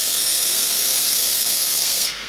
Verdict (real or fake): fake